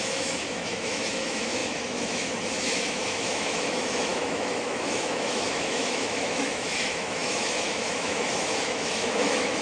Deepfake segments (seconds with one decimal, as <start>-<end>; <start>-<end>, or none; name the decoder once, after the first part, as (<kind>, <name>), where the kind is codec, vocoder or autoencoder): 0.0-9.6 (autoencoder, DAC-VAE)